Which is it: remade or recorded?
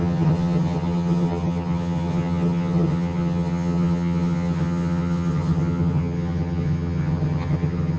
remade